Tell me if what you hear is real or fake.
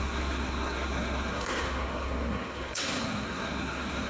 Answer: fake